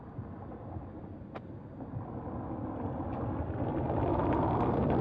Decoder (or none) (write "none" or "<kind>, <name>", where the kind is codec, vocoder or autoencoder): none